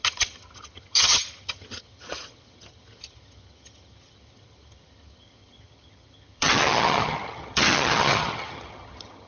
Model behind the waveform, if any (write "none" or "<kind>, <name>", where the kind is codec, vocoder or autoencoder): vocoder, HiFi-GAN